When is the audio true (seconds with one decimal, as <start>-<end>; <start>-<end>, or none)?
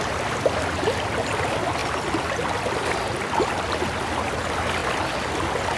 0.0-5.8